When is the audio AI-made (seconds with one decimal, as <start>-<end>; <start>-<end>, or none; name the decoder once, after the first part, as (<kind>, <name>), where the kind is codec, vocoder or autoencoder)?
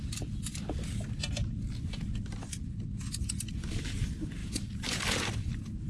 4.4-5.9 (vocoder, BigVGAN v2)